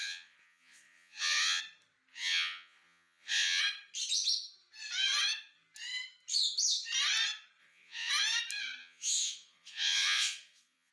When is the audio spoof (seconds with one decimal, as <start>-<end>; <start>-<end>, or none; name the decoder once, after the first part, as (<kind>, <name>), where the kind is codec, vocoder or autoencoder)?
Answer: 0.0-1.6 (vocoder, Vocos); 2.1-3.6; 7.6-8.1; 8.8-10.9